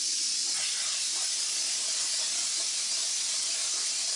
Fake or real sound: real